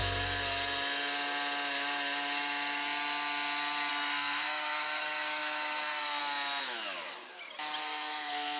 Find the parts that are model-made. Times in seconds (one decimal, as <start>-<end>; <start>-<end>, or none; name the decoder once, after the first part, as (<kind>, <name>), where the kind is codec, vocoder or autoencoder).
3.9-6.2 (codec, SNAC); 7.8-8.6